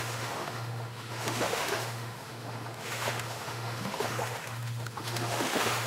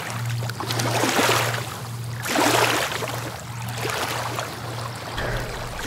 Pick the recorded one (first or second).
second